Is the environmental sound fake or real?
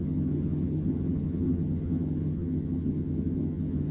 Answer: fake